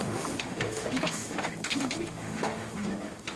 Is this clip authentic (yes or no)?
no